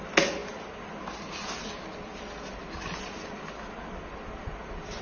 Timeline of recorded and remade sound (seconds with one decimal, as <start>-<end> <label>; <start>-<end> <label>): 0.0-5.0 recorded